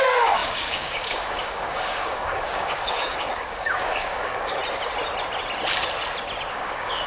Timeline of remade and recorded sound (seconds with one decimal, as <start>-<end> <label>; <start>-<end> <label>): 0.0-4.6 remade; 4.6-6.5 recorded; 6.5-7.1 remade